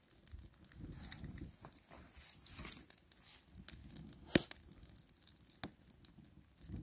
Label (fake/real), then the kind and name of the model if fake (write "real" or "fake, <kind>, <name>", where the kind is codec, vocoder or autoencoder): real